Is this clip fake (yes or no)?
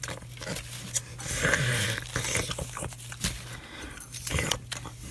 no